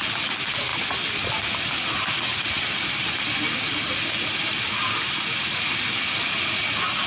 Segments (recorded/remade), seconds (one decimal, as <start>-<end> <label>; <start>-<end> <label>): 0.0-7.1 recorded